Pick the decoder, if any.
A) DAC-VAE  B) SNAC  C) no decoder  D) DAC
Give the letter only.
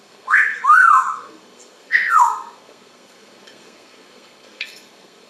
B